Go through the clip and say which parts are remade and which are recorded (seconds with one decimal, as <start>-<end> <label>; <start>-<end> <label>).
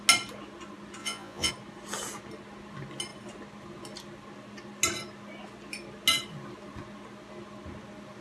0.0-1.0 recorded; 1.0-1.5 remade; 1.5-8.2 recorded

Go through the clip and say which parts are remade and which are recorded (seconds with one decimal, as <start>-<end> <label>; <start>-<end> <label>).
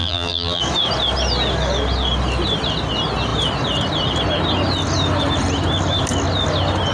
0.0-0.6 remade; 0.6-6.9 recorded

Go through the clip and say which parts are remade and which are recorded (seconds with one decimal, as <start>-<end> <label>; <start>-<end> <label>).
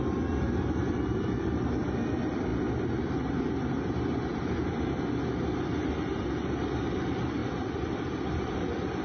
0.0-2.5 remade; 2.5-6.9 recorded; 6.9-9.0 remade